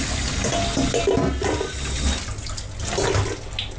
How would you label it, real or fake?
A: real